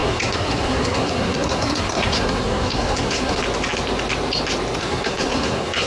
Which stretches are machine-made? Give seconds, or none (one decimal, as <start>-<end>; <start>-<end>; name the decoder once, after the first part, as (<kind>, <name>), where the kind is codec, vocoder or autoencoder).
0.0-3.4 (codec, SNAC); 4.8-5.9